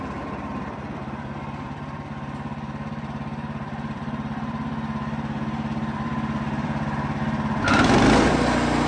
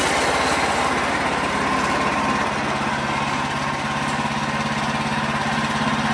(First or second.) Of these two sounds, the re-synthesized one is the first